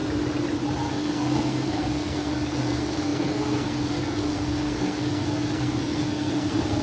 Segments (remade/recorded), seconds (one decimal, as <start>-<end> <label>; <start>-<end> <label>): 0.0-0.9 recorded; 0.9-6.8 remade